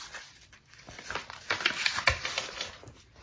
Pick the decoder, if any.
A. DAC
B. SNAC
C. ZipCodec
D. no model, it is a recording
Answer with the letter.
D